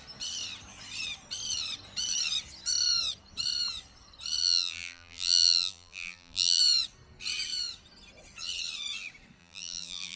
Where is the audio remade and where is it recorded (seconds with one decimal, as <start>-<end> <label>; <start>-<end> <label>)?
0.0-4.4 recorded; 4.4-6.6 remade; 6.6-9.4 recorded; 9.4-10.2 remade